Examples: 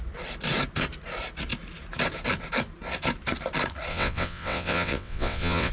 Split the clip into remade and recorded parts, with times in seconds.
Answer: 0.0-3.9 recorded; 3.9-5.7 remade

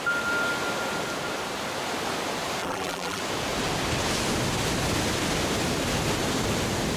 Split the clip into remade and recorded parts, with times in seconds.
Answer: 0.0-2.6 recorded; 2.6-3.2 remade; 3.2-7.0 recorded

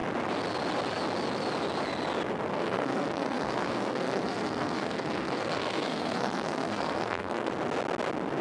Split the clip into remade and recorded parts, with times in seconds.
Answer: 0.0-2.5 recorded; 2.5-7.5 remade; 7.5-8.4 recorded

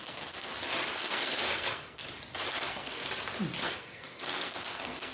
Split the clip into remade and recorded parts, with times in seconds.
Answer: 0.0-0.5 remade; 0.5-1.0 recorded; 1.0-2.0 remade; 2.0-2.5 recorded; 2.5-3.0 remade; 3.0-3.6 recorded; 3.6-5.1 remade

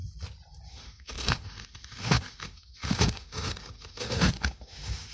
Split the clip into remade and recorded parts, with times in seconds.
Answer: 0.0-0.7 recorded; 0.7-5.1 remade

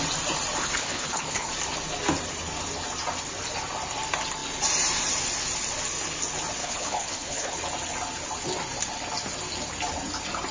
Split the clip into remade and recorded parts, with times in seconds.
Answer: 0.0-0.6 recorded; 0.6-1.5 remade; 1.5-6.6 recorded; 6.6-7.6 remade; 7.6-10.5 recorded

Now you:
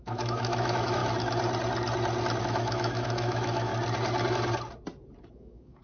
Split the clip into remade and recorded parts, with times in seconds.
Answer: 0.0-1.0 remade; 1.0-2.4 recorded; 2.4-3.7 remade; 3.7-5.3 recorded; 5.3-5.8 remade

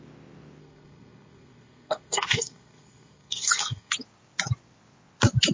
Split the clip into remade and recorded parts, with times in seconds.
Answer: 0.0-0.6 recorded; 0.6-3.9 remade; 3.9-5.5 recorded